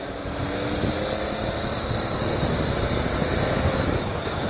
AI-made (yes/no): no